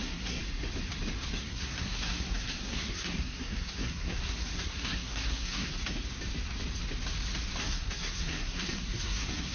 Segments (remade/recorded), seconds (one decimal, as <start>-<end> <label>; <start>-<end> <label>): 0.0-0.4 remade; 0.4-1.4 recorded; 1.4-5.7 remade; 5.7-7.6 recorded; 7.6-9.5 remade